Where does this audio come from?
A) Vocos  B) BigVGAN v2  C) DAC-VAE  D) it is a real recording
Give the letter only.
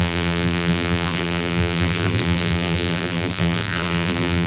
B